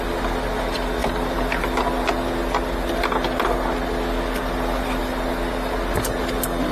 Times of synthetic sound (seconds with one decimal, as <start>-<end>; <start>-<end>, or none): none